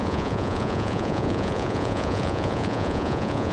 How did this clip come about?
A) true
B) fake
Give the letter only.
B